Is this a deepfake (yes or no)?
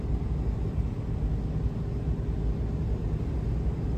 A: no